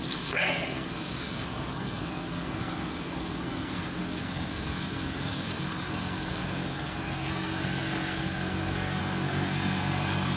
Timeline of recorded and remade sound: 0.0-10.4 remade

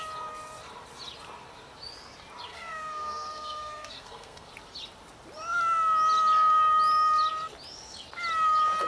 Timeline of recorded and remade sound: 0.0-2.5 recorded; 2.5-4.5 remade; 4.5-8.9 recorded

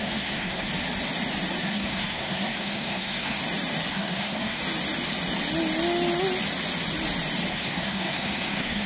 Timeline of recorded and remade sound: 0.0-0.7 remade; 0.7-1.6 recorded; 1.6-3.4 remade; 3.4-3.9 recorded; 3.9-4.6 remade; 4.6-7.5 recorded; 7.5-8.9 remade

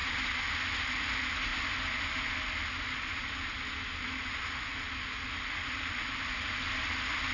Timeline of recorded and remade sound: 0.0-7.3 recorded

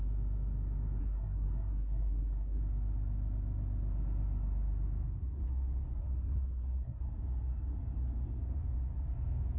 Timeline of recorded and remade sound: 0.0-1.0 recorded; 1.0-2.6 remade; 2.6-6.0 recorded; 6.0-7.0 remade; 7.0-9.6 recorded